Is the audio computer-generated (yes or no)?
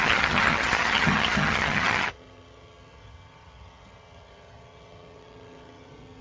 yes